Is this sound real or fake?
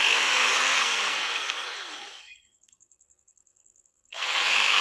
fake